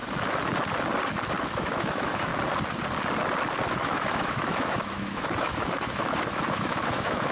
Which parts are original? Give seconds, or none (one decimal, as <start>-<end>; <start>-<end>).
0.0-1.4; 2.3-3.7